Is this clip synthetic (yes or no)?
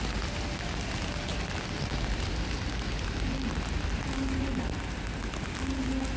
no